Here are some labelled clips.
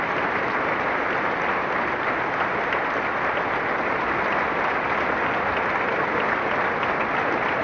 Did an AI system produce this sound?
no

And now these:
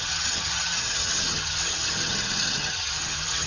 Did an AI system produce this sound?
yes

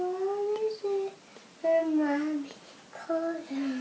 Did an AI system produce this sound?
no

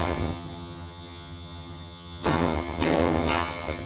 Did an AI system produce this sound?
yes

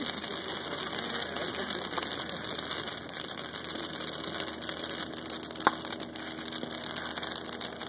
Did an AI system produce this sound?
no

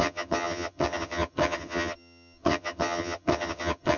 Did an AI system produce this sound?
yes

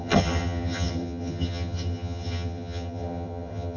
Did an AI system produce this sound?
yes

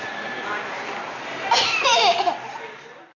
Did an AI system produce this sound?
no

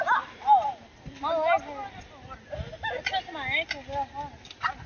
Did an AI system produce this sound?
no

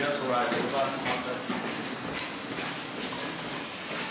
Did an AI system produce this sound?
no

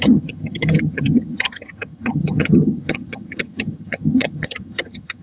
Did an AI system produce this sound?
yes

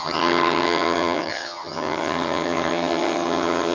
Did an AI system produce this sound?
yes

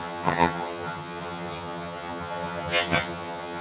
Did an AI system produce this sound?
yes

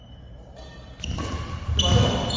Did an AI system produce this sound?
no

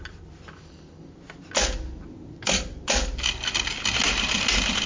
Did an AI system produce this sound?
no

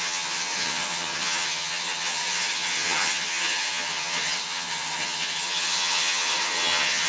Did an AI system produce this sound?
yes